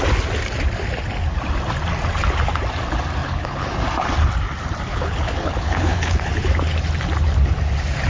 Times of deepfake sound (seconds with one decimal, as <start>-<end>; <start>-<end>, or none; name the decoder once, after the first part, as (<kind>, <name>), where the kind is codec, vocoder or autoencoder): 3.2-3.7 (codec, HILCodec); 4.9-6.3